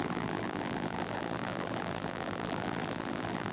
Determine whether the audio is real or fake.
fake